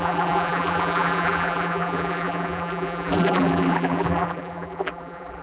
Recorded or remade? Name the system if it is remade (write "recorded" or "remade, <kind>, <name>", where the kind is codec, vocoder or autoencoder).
remade, vocoder, BigVGAN v2